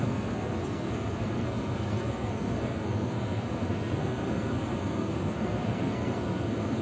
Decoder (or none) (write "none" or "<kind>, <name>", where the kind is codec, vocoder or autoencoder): codec, SNAC